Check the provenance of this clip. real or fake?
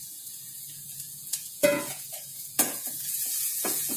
fake